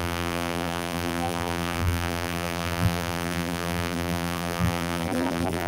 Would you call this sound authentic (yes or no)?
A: no